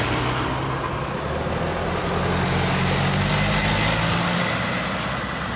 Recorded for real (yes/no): yes